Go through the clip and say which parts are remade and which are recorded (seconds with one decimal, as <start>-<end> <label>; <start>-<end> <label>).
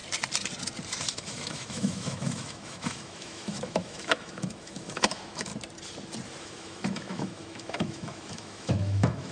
0.0-1.1 recorded; 1.1-5.5 remade; 5.5-6.4 recorded; 6.4-9.3 remade